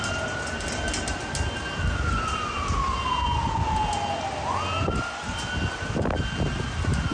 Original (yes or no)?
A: yes